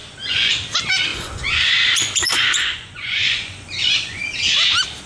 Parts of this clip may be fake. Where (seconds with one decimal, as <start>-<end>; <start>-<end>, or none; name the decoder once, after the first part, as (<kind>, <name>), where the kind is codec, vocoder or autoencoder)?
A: 0.0-0.5 (vocoder, Vocos); 1.1-4.2